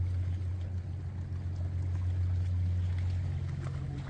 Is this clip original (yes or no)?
yes